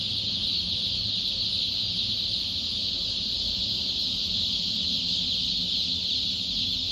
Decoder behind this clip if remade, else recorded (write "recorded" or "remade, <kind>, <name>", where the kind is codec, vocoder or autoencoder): recorded